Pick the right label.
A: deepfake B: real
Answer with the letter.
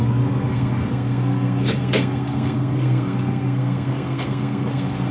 A